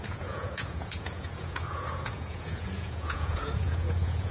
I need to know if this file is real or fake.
fake